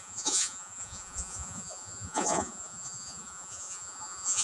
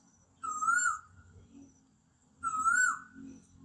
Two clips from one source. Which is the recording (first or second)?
second